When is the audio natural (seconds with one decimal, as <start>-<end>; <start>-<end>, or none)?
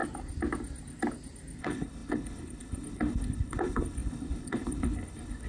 0.0-1.6